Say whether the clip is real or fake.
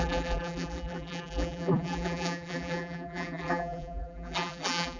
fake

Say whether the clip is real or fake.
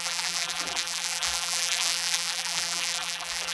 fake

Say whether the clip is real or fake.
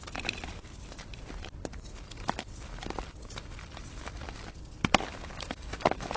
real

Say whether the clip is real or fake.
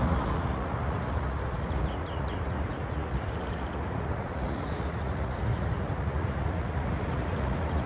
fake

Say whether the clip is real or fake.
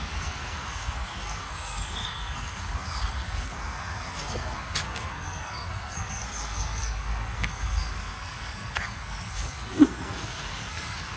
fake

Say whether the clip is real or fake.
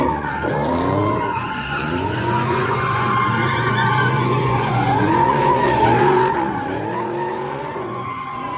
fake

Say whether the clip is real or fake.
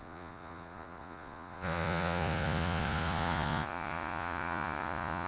fake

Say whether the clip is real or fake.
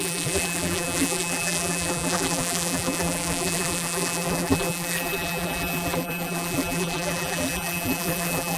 fake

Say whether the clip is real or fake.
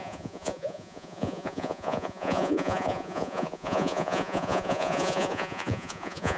fake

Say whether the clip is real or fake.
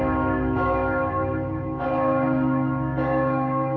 fake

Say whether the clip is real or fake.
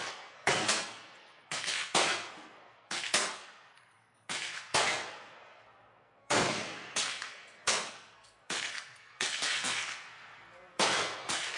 fake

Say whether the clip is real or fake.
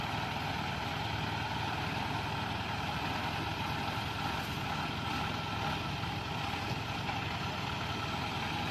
real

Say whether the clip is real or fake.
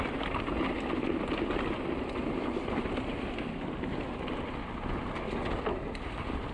real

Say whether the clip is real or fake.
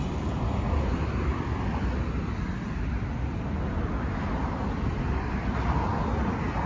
real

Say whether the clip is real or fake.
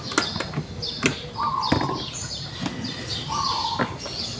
real